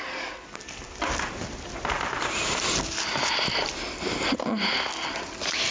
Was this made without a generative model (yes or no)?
yes